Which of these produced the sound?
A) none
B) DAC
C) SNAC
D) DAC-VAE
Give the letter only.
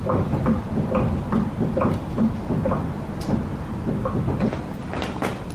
A